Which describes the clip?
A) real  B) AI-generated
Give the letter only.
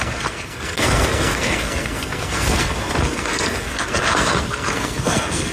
B